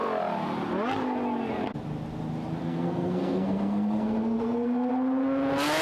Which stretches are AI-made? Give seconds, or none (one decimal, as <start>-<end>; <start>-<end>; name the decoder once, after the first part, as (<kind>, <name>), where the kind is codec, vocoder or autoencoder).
2.6-4.9 (codec, SNAC)